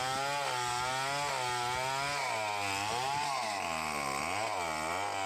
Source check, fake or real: real